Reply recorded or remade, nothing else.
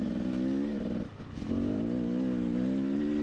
recorded